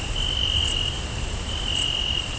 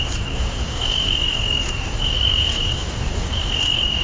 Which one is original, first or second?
first